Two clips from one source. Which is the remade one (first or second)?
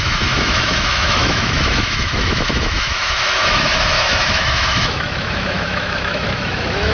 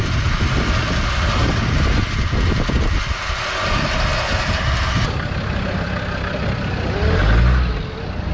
first